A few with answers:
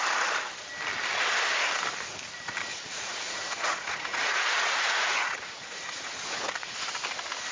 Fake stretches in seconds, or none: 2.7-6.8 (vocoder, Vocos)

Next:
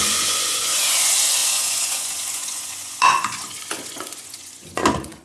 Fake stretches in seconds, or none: 0.0-5.2 (vocoder, Vocos)

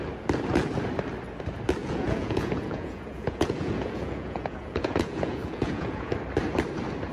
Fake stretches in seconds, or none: 1.8-6.1 (vocoder, Vocos)

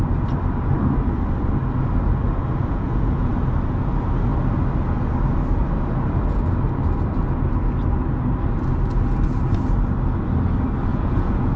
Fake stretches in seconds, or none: 2.6-3.3 (vocoder, Vocos); 10.9-11.6

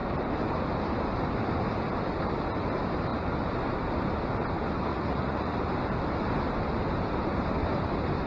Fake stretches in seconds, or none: 4.9-5.6 (vocoder, Vocos)

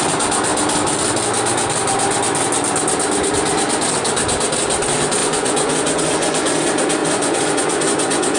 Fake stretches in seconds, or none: 5.2-6.5 (vocoder, Vocos); 7.0-8.4